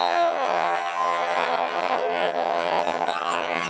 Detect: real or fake fake